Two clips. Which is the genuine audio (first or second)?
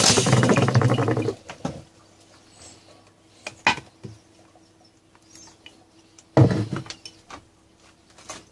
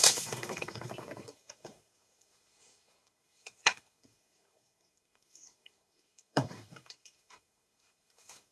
first